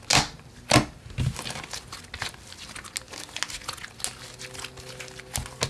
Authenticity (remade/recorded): recorded